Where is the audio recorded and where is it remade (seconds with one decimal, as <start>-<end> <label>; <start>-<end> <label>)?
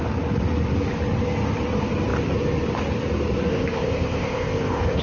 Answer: 0.0-3.5 recorded; 3.5-5.0 remade